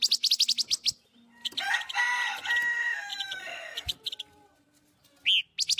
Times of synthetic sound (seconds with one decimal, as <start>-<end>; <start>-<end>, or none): 1.4-2.0; 3.1-4.6